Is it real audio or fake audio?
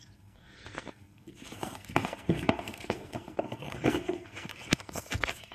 fake